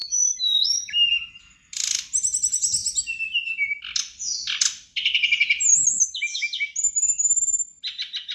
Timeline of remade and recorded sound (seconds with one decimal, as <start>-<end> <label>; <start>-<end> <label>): 0.0-1.1 remade; 1.1-5.7 recorded; 5.7-6.5 remade; 6.5-8.3 recorded